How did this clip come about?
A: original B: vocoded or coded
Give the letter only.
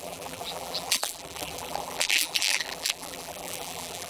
B